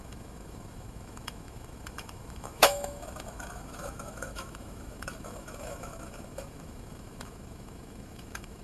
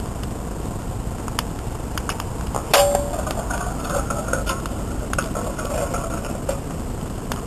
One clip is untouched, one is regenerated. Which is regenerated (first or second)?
first